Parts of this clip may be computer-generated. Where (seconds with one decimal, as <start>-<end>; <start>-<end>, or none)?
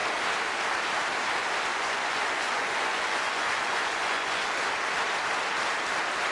1.7-4.5